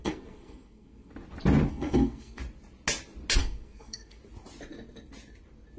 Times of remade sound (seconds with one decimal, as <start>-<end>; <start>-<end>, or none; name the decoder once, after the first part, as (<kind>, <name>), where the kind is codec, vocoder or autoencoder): 0.0-1.1 (codec, SNAC); 1.7-2.4; 3.4-4.2